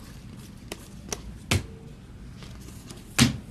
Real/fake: real